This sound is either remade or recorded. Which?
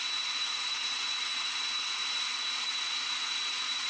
remade